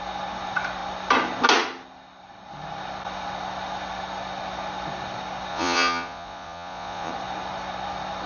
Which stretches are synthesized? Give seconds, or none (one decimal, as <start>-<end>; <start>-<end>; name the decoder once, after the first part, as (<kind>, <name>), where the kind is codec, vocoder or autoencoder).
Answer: 5.5-7.1 (vocoder, Vocos)